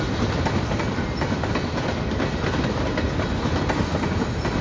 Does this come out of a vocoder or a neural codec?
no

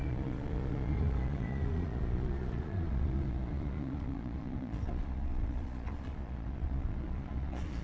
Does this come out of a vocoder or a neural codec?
yes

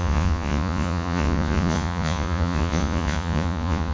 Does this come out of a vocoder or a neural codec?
yes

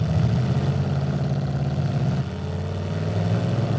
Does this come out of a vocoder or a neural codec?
no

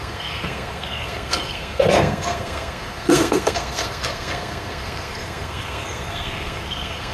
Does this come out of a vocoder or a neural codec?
yes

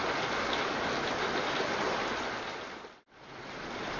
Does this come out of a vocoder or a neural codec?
no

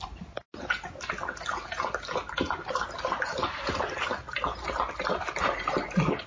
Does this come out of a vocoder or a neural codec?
no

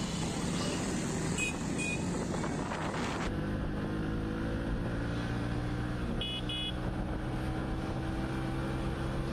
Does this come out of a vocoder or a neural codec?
no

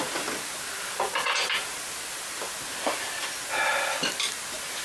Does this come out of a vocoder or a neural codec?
no